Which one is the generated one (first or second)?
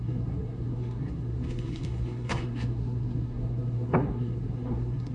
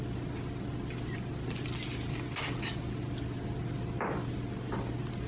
first